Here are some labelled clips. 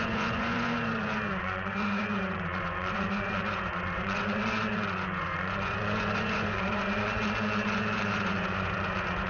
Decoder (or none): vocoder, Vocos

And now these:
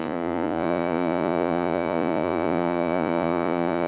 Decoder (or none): vocoder, Vocos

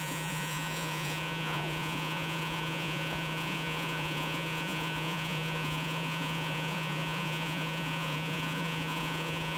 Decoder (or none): vocoder, Vocos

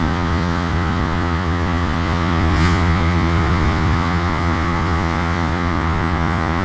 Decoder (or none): vocoder, Vocos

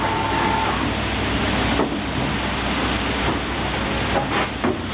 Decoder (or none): none